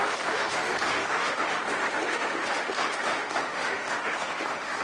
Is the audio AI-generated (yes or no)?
yes